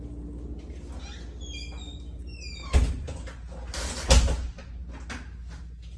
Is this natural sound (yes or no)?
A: yes